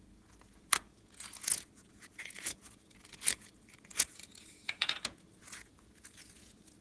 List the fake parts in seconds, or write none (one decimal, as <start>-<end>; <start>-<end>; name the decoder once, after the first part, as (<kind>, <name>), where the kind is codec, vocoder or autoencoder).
0.0-6.8 (vocoder, Vocos)